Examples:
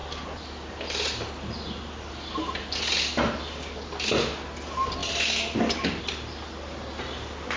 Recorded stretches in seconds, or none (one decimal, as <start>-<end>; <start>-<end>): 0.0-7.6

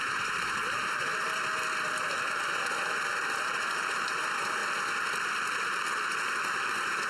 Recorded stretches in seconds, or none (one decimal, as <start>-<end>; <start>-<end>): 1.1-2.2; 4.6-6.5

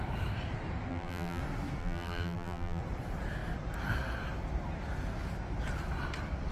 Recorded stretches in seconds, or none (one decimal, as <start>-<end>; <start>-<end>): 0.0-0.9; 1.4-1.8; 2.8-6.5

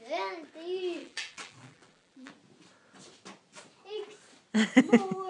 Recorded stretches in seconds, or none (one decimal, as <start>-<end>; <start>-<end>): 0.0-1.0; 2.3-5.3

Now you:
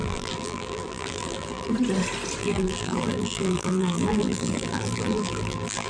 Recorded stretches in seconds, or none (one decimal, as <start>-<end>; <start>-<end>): 1.7-2.4